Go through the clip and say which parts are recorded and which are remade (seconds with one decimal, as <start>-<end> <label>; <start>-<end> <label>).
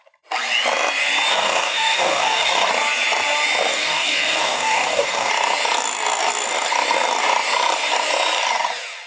0.0-1.3 recorded; 1.3-2.7 remade; 2.7-3.7 recorded; 3.7-5.3 remade; 5.3-9.1 recorded